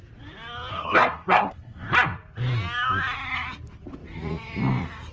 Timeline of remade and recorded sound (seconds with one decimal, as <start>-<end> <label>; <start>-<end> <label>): 0.0-0.7 recorded; 0.7-1.9 remade; 1.9-5.1 recorded

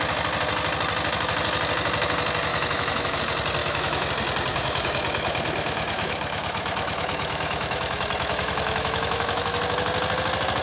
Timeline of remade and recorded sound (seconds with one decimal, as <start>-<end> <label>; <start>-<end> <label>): 0.0-2.5 recorded; 2.5-3.2 remade; 3.2-3.6 recorded; 3.6-4.1 remade; 4.1-4.5 recorded; 4.5-9.6 remade; 9.6-10.6 recorded

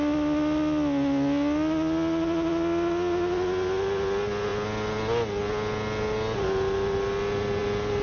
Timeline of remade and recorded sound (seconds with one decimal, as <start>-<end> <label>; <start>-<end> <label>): 0.0-8.0 recorded

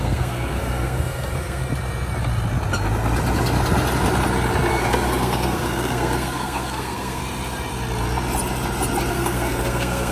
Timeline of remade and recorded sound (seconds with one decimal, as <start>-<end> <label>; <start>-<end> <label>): 0.0-1.6 remade; 1.6-4.7 recorded; 4.7-7.2 remade; 7.2-9.1 recorded; 9.1-10.1 remade

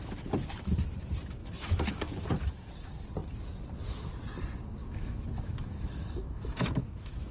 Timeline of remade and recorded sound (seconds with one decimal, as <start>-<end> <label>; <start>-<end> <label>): 0.0-1.4 recorded; 1.4-2.7 remade; 2.7-4.8 recorded; 4.8-7.3 remade